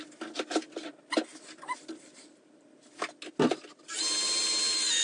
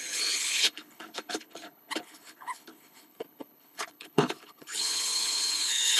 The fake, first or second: second